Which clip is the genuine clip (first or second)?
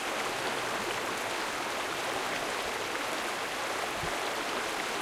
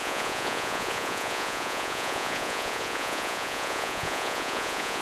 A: first